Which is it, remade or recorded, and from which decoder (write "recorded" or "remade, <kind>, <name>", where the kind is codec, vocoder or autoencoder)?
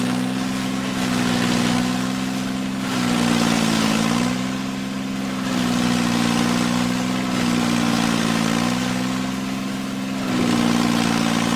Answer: recorded